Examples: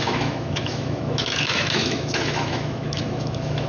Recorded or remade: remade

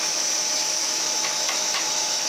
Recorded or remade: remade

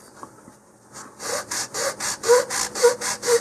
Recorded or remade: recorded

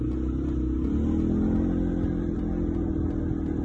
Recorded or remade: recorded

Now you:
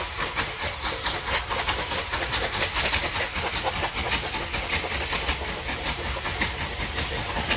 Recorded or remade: recorded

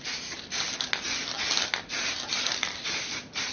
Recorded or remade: recorded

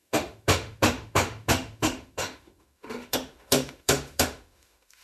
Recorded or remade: remade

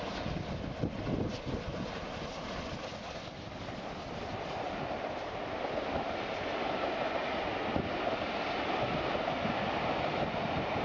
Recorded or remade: recorded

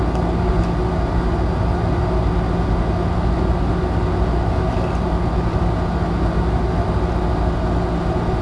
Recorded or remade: recorded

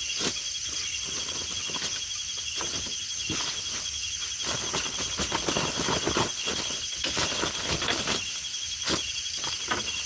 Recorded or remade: recorded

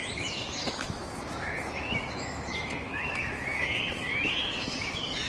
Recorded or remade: remade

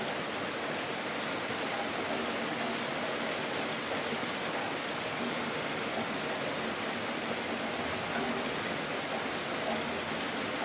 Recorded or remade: recorded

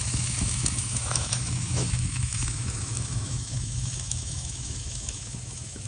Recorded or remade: remade